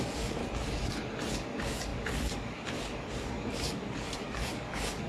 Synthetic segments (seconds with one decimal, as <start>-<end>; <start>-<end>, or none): 0.0-0.4; 1.3-5.1